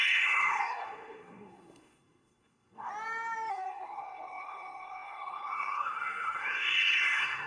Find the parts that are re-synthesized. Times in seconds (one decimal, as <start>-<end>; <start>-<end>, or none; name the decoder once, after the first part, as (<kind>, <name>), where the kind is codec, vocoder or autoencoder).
0.0-2.9 (codec, SNAC); 3.5-7.5